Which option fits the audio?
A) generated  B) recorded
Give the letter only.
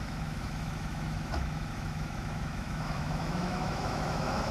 A